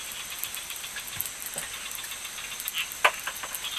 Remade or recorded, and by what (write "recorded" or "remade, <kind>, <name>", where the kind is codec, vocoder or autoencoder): recorded